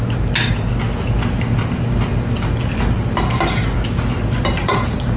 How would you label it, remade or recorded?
recorded